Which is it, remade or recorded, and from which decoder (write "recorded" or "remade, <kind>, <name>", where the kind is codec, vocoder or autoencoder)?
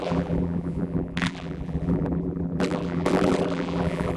remade, vocoder, BigVGAN v2